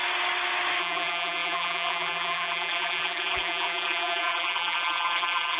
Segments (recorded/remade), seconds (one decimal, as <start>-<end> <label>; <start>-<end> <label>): 0.0-0.8 recorded; 0.8-5.6 remade